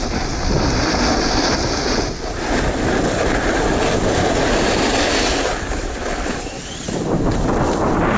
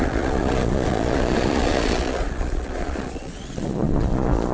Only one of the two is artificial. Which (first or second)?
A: second